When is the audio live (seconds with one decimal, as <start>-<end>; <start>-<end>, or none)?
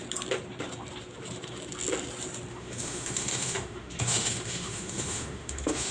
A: 0.0-2.5